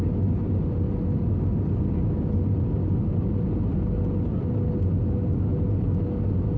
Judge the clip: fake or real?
real